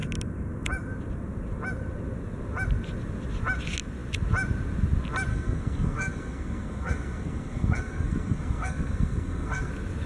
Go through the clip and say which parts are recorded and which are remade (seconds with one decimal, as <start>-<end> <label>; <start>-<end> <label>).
0.0-5.3 recorded; 5.3-9.7 remade; 9.7-10.1 recorded